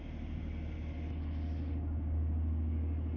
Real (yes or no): yes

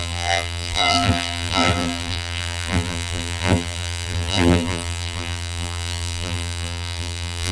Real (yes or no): no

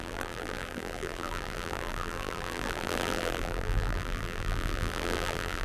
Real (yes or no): no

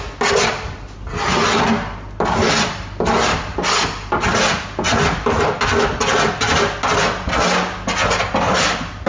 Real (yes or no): yes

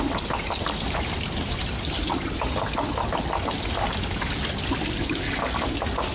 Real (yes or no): no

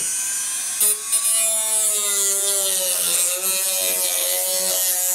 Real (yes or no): yes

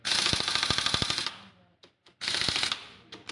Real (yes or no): yes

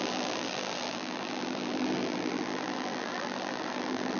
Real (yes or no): no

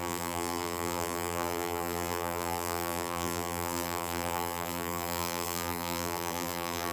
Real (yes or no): no